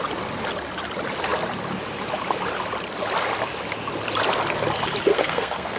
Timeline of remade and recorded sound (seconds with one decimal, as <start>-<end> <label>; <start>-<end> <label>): 0.0-5.1 recorded; 5.1-5.8 remade